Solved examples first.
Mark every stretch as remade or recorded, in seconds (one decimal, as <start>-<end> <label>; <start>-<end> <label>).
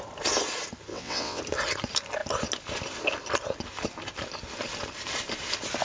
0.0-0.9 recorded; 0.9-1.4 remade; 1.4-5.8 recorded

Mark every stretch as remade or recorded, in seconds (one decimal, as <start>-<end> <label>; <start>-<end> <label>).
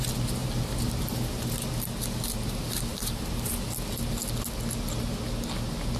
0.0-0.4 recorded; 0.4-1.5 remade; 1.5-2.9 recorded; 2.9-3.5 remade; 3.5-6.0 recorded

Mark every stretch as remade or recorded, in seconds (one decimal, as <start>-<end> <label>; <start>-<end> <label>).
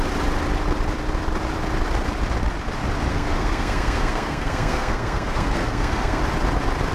0.0-3.1 recorded; 3.1-6.2 remade; 6.2-6.9 recorded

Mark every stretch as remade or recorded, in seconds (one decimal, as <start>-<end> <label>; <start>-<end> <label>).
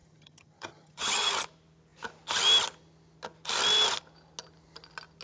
0.0-1.3 remade; 1.3-5.2 recorded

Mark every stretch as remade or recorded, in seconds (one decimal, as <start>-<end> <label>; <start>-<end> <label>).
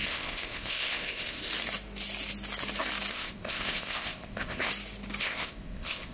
0.0-1.5 remade; 1.5-3.1 recorded; 3.1-4.7 remade; 4.7-5.2 recorded; 5.2-6.1 remade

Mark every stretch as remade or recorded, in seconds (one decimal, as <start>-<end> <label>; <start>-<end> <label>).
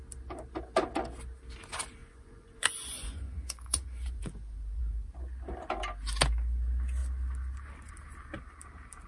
0.0-2.0 recorded; 2.0-4.8 remade; 4.8-9.1 recorded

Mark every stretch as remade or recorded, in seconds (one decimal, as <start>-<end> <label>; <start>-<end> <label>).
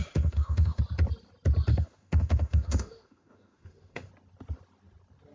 0.0-0.8 remade; 0.8-1.7 recorded; 1.7-4.1 remade; 4.1-5.3 recorded